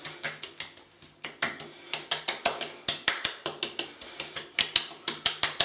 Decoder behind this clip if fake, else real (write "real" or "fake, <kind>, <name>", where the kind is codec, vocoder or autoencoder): real